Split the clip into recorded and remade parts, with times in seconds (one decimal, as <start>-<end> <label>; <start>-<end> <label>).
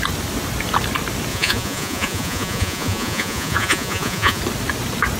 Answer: 0.0-1.3 recorded; 1.3-4.4 remade; 4.4-5.2 recorded